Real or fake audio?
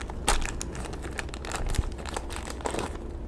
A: real